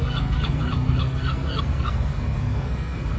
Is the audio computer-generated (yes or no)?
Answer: yes